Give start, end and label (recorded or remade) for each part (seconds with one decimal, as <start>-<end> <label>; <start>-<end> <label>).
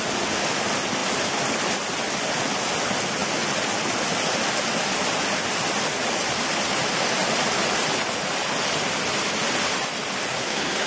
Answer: 0.0-10.3 recorded; 10.3-10.9 remade